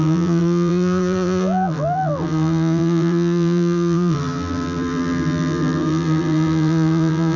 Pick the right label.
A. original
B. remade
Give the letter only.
B